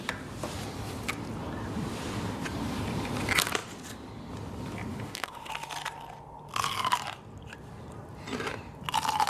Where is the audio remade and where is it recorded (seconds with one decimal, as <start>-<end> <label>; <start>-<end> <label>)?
0.0-4.9 recorded; 4.9-5.5 remade; 5.5-9.3 recorded